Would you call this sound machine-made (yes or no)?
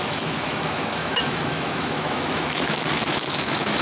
yes